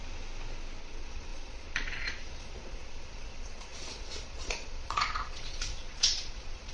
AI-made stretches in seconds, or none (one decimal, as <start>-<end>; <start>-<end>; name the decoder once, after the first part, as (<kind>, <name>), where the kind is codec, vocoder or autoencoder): 0.8-6.7 (vocoder, Vocos)